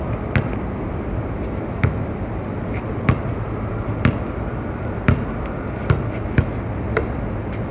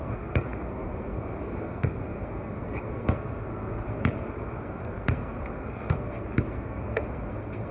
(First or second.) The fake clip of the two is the second